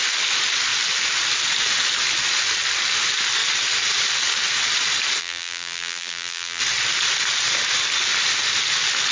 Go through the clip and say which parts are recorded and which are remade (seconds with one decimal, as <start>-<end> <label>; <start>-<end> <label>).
0.0-5.2 recorded; 5.2-6.6 remade; 6.6-9.1 recorded